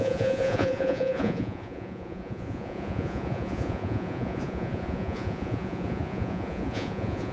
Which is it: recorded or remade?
remade